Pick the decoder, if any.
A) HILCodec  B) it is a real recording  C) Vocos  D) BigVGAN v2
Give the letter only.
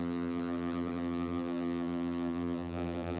D